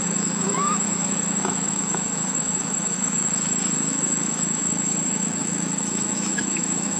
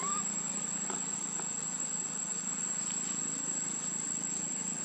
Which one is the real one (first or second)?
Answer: second